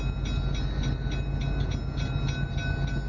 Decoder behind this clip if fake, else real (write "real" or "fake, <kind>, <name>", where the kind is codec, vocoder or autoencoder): real